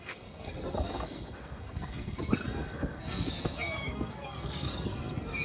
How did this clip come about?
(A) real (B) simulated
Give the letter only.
B